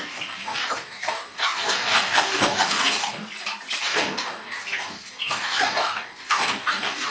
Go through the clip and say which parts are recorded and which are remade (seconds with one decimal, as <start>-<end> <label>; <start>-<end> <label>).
0.0-3.2 remade; 3.2-3.8 recorded; 3.8-7.1 remade